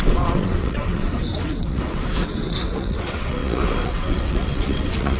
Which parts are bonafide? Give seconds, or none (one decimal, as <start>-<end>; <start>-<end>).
none